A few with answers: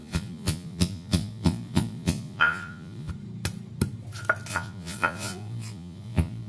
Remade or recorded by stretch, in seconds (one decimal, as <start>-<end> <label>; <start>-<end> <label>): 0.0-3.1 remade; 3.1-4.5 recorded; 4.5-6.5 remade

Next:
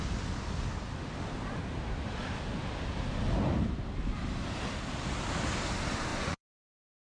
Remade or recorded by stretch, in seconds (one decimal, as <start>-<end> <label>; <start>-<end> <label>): 0.0-6.1 recorded; 6.1-6.6 remade; 6.6-7.2 recorded

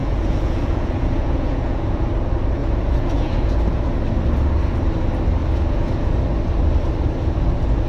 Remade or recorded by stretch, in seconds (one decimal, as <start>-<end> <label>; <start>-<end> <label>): 0.0-2.1 remade; 2.1-2.6 recorded; 2.6-3.8 remade; 3.8-5.4 recorded; 5.4-6.2 remade; 6.2-7.9 recorded

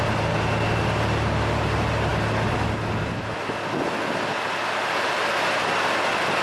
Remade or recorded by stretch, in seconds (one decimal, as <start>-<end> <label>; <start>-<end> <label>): 0.0-6.4 recorded